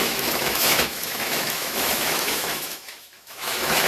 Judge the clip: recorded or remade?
remade